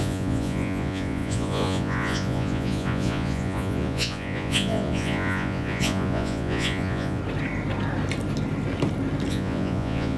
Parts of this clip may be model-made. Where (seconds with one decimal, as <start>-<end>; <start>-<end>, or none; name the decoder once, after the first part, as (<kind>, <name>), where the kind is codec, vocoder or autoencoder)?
0.0-7.2 (vocoder, Vocos); 9.3-10.2